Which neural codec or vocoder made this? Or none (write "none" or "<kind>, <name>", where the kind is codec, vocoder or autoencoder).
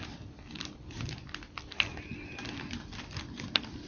none